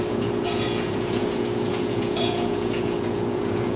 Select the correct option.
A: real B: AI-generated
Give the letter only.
B